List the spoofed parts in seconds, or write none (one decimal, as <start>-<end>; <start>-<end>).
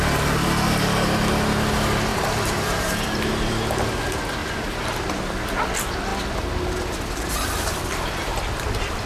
2.1-3.3; 4.4-5.4